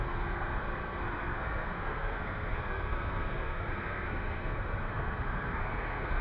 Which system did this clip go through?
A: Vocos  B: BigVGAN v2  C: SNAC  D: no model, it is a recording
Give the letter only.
C